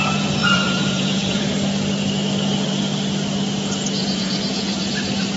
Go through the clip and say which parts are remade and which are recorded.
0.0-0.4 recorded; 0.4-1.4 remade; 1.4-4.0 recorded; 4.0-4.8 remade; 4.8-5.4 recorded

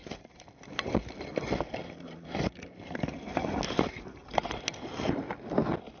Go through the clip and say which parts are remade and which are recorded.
0.0-6.0 recorded